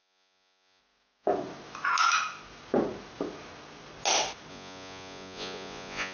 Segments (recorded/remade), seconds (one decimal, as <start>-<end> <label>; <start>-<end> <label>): 0.0-0.8 remade; 0.8-4.5 recorded; 4.5-6.1 remade